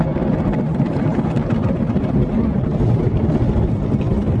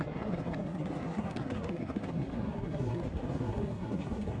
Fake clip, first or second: second